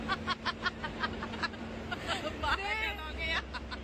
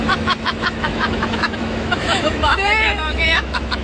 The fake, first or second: second